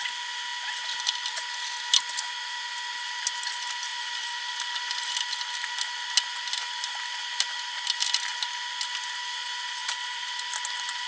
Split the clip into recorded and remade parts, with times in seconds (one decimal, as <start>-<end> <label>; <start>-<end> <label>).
0.0-3.9 recorded; 3.9-5.2 remade; 5.2-9.8 recorded; 9.8-11.1 remade